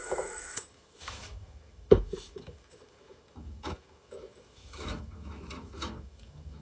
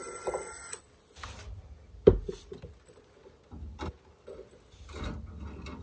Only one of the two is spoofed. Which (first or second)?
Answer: first